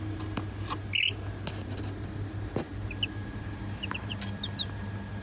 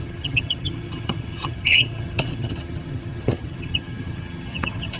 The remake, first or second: second